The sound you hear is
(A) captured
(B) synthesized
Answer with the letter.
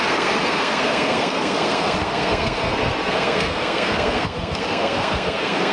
B